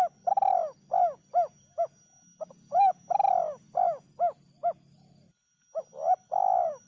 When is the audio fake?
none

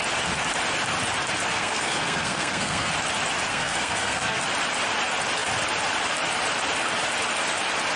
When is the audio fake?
1.5-2.9 (codec, SNAC); 3.5-4.4